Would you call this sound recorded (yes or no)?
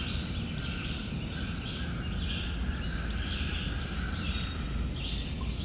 yes